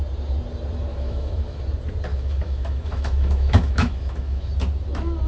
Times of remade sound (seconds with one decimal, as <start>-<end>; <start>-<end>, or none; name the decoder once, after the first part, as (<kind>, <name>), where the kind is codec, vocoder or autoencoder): 0.9-1.6 (autoencoder, DAC-VAE); 2.1-4.5